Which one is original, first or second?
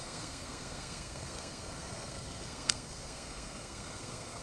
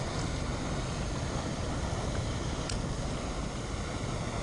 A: second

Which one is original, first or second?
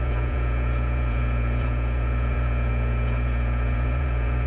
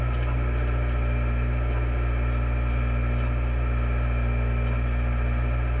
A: second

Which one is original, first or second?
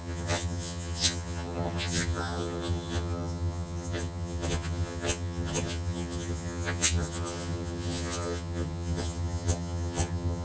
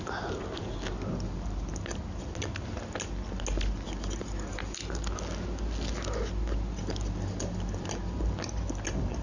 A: second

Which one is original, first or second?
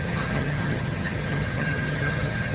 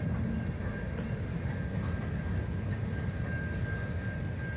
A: second